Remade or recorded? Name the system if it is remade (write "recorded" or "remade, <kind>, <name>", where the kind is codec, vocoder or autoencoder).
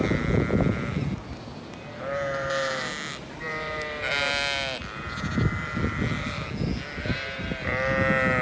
recorded